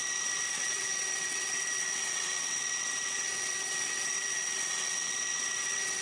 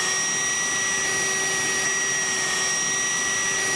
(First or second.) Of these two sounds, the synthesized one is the first